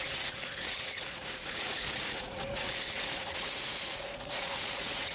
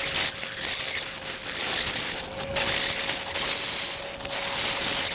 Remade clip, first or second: first